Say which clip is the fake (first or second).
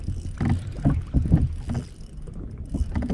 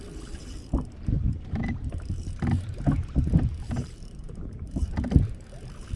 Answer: second